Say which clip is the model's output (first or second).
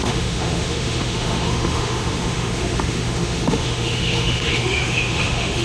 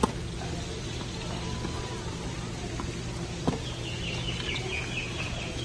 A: first